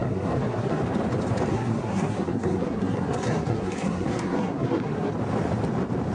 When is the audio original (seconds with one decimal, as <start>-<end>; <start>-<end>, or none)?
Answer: 0.8-1.5; 5.1-6.1